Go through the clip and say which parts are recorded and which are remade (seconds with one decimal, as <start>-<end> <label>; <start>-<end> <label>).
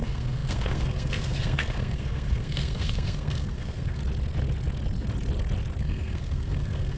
0.0-4.0 remade; 4.0-5.8 recorded; 5.8-7.0 remade